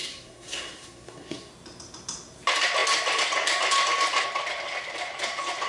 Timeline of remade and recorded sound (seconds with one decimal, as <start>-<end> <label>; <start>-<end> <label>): 0.0-1.5 remade; 1.5-5.7 recorded